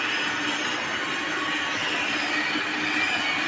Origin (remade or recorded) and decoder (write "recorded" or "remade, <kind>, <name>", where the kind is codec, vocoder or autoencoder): recorded